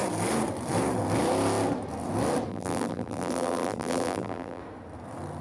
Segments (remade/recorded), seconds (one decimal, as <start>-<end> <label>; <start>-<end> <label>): 0.0-2.5 recorded; 2.5-4.6 remade; 4.6-5.4 recorded